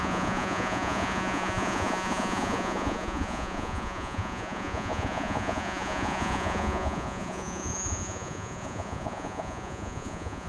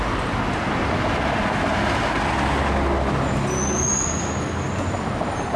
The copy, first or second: first